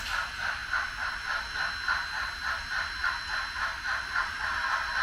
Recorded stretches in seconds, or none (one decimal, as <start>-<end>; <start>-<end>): 0.0-5.0